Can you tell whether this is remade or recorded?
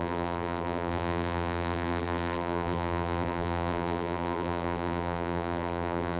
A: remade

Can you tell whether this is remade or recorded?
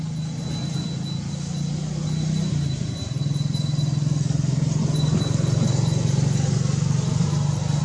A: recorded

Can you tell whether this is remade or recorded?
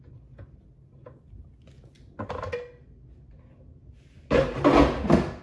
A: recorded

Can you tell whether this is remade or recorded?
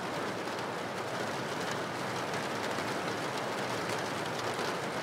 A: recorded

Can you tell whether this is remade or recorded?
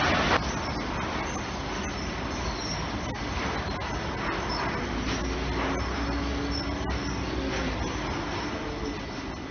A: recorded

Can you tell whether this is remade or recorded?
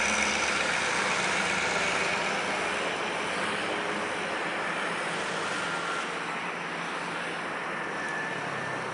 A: recorded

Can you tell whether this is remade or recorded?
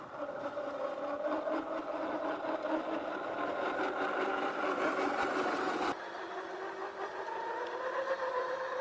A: recorded